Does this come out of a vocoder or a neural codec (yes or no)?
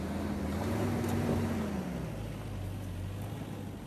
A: no